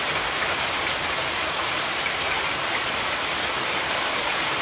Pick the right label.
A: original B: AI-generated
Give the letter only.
B